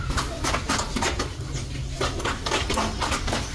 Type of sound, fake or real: real